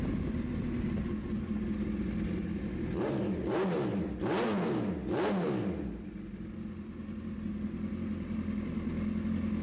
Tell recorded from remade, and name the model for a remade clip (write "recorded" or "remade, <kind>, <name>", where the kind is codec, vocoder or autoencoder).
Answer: recorded